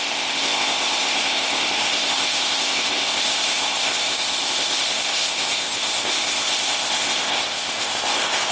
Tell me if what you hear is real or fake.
fake